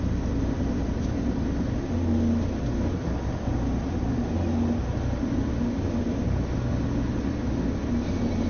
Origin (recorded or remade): recorded